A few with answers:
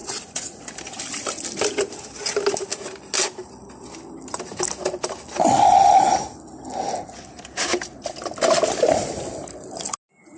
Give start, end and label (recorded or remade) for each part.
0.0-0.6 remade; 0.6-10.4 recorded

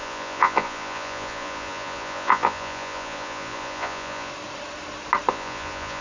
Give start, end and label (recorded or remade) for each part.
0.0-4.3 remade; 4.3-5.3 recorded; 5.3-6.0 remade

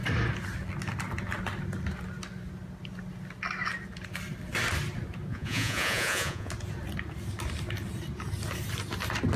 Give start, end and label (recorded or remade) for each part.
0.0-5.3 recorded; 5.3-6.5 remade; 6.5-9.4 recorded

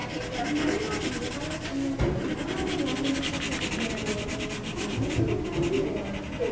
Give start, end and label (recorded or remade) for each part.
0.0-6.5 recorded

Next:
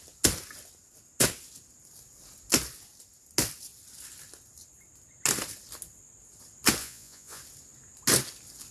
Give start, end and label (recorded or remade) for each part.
0.0-6.8 recorded; 6.8-7.4 remade; 7.4-8.7 recorded

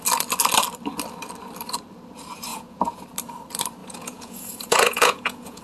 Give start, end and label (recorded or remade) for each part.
0.0-2.5 recorded; 2.5-3.0 remade; 3.0-3.8 recorded; 3.8-5.6 remade

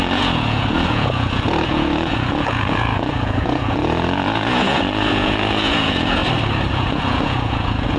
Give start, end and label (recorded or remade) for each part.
0.0-6.2 remade; 6.2-6.7 recorded; 6.7-8.0 remade

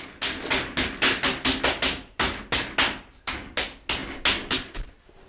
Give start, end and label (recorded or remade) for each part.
0.0-5.3 recorded